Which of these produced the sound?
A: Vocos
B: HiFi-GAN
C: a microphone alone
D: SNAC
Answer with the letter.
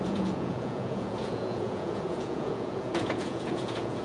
A